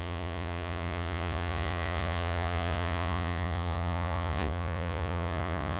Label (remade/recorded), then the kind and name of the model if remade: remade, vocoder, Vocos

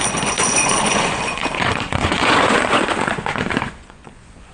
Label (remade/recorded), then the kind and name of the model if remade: remade, vocoder, Vocos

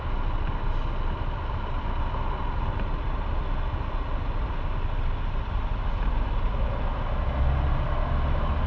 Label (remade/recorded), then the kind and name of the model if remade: recorded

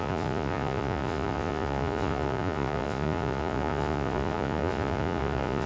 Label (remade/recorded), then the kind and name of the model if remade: remade, vocoder, Vocos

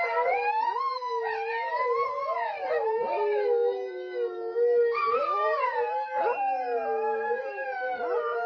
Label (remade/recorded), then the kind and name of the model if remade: recorded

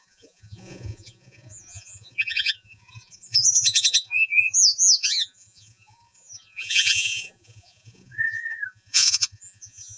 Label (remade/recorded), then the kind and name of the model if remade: remade, vocoder, Vocos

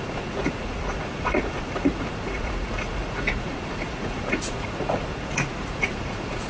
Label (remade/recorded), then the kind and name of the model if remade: remade, vocoder, Vocos